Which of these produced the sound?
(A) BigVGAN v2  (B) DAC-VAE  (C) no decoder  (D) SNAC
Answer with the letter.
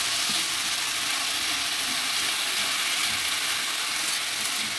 C